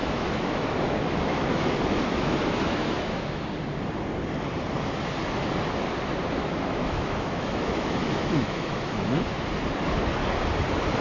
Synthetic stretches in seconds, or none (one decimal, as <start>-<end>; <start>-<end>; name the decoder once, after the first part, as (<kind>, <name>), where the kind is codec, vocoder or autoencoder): 0.0-3.5 (autoencoder, DAC-VAE); 6.4-9.2